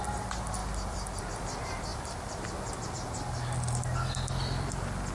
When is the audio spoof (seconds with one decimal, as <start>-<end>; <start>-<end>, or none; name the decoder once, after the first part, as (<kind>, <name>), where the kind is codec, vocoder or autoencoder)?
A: none